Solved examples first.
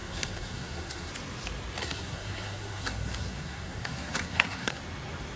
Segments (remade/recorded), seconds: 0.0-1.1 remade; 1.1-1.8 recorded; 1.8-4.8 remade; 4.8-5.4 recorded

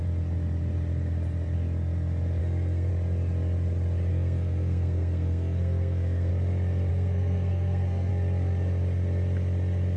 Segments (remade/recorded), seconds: 0.0-2.4 recorded; 2.4-2.9 remade; 2.9-4.1 recorded; 4.1-6.3 remade; 6.3-6.9 recorded; 6.9-8.1 remade; 8.1-10.0 recorded

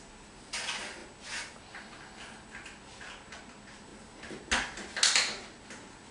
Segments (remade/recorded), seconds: 0.0-6.1 recorded

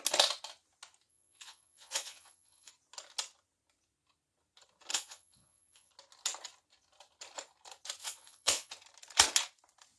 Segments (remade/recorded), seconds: 0.0-1.1 recorded; 1.1-2.7 remade; 2.7-4.9 recorded; 4.9-5.9 remade; 5.9-8.0 recorded; 8.0-8.7 remade; 8.7-10.0 recorded

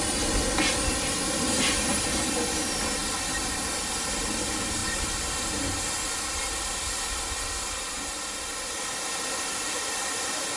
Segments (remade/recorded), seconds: 0.0-10.6 recorded

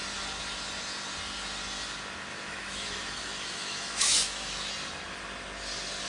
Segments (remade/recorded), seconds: 0.0-2.3 recorded; 2.3-4.7 remade; 4.7-6.1 recorded

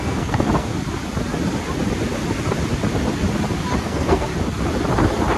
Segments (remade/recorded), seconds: 0.0-0.7 remade; 0.7-3.8 recorded; 3.8-4.3 remade; 4.3-5.4 recorded